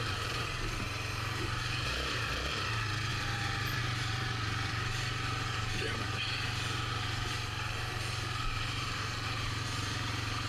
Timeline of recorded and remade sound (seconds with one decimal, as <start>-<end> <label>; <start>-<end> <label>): 0.0-10.5 remade